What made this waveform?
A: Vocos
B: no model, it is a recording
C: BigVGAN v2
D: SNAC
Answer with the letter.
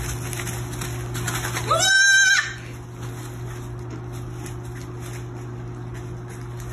B